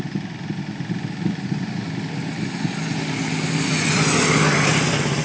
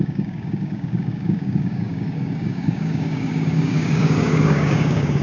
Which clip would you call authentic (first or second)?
first